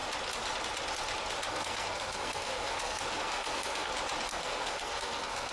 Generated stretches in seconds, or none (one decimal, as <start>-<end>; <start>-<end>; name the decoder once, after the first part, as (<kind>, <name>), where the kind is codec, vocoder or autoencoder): 1.5-3.9 (codec, SNAC); 4.3-5.5